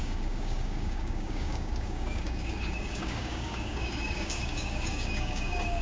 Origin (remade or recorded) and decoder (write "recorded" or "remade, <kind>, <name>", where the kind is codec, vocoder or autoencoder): remade, codec, DAC